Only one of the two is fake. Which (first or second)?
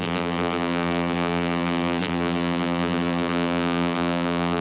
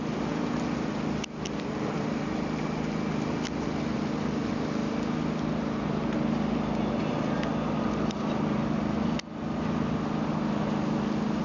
first